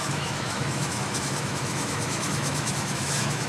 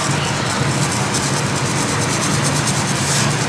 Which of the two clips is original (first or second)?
second